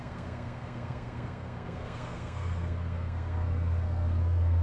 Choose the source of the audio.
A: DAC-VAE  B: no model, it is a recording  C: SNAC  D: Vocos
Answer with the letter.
C